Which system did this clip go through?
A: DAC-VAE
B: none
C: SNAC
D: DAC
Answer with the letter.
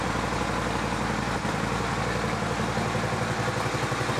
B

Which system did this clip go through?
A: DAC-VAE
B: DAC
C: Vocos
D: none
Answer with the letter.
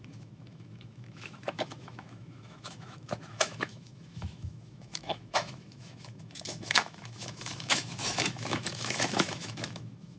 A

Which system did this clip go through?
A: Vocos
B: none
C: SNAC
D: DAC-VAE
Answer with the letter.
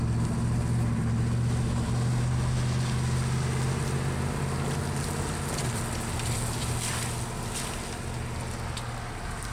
B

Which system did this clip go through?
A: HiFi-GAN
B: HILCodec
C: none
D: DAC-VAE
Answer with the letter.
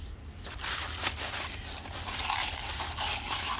C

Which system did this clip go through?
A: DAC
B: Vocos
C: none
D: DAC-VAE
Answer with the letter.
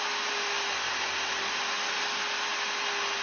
C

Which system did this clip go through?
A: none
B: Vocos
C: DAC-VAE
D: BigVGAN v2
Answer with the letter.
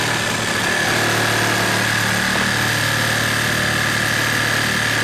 A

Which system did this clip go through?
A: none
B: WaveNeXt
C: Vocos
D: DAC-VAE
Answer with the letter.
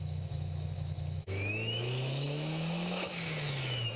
D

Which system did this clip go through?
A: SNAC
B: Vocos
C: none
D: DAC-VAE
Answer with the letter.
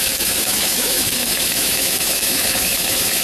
D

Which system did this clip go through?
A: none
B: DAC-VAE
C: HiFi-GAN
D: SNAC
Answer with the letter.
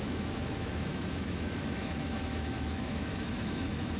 B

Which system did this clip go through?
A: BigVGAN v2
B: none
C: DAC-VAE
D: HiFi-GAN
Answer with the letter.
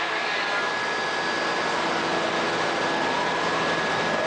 B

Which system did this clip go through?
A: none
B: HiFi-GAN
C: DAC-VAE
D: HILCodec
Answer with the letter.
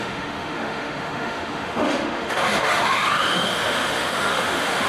C